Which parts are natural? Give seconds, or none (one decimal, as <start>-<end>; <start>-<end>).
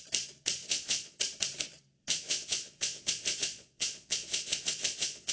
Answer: 0.0-0.6; 1.2-2.1